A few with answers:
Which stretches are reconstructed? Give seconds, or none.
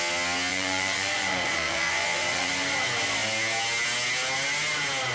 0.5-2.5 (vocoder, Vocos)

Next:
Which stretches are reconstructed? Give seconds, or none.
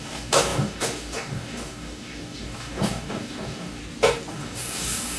0.0-3.8 (codec, DAC); 4.3-5.2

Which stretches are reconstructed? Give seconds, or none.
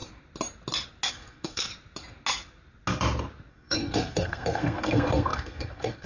1.1-1.7 (codec, SNAC); 3.5-6.1